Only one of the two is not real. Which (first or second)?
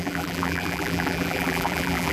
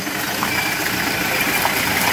first